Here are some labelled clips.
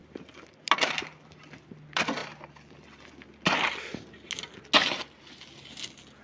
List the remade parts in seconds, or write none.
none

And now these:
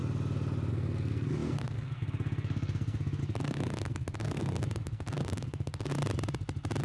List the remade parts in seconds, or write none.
0.7-5.9 (codec, SNAC)

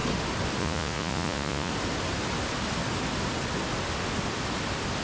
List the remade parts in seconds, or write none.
0.6-1.7 (vocoder, Vocos)

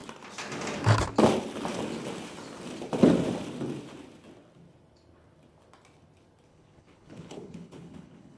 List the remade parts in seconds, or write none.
6.5-8.4 (codec, HILCodec)

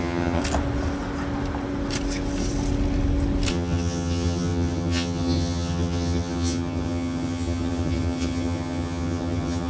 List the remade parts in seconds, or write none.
0.0-0.4 (vocoder, HiFi-GAN); 3.5-9.7

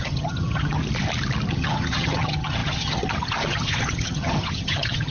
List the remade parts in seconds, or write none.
0.0-0.8 (vocoder, HiFi-GAN); 1.5-5.1

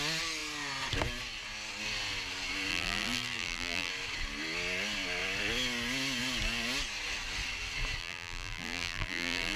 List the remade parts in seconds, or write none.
2.7-3.9 (vocoder, BigVGAN v2); 8.0-9.6